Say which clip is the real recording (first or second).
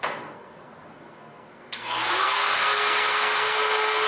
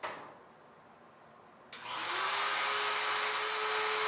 second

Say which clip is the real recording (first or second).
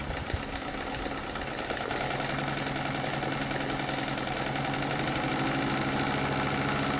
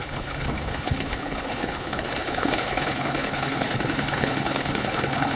first